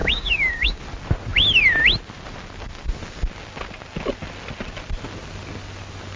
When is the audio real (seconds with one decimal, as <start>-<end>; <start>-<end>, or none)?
0.8-6.2

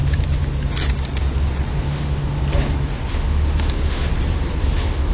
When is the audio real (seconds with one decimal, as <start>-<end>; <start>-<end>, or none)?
0.0-1.7; 2.4-3.1; 4.1-4.6

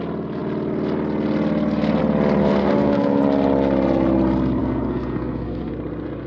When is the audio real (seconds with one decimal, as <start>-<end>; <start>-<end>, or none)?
0.0-2.4; 3.2-4.6; 5.7-6.3